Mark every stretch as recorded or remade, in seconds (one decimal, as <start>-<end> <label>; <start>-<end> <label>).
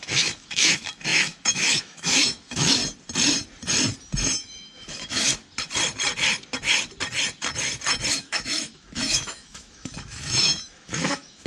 0.0-2.8 remade; 2.8-4.4 recorded; 4.4-5.3 remade; 5.3-8.1 recorded; 8.1-11.5 remade